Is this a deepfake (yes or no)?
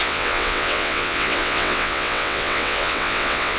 yes